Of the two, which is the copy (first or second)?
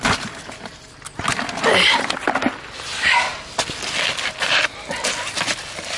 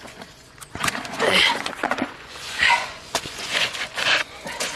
second